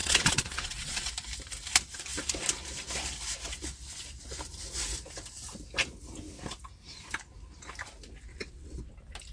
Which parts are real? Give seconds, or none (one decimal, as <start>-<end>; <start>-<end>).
1.1-8.3; 8.9-9.3